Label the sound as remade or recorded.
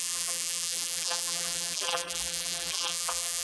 remade